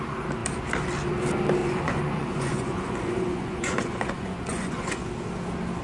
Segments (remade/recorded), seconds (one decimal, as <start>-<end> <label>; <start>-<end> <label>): 0.0-1.6 recorded; 1.6-5.1 remade; 5.1-5.8 recorded